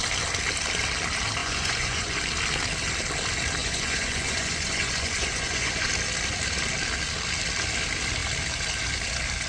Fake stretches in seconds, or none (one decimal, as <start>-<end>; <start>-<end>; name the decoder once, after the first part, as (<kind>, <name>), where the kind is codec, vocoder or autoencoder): 1.4-2.2 (vocoder, Vocos); 3.6-5.9